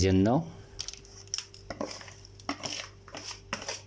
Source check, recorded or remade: recorded